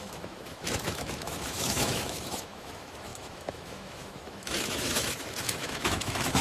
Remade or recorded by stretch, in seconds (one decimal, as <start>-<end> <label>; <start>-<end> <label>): 0.0-6.4 remade